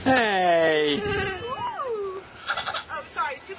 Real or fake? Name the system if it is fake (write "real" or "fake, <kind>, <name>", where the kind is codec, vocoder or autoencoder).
real